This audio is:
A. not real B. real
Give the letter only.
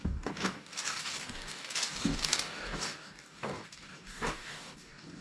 A